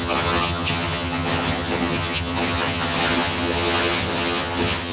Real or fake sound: fake